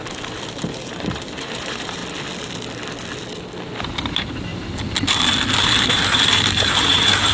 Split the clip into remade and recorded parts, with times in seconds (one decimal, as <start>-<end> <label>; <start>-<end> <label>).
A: 0.0-2.0 remade; 2.0-4.1 recorded; 4.1-4.5 remade; 4.5-5.9 recorded; 5.9-7.3 remade